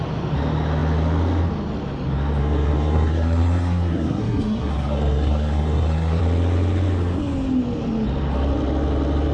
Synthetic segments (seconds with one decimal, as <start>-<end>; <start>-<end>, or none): 2.4-6.2